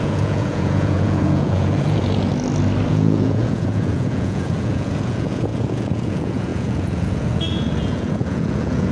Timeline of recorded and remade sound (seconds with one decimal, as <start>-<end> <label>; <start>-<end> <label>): 0.0-2.3 remade; 2.3-2.9 recorded; 2.9-8.9 remade